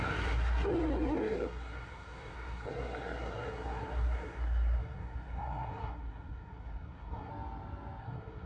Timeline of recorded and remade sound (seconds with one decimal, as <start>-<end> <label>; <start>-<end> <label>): 0.0-7.3 remade; 7.3-8.0 recorded; 8.0-8.5 remade